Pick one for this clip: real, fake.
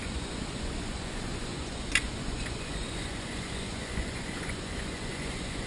fake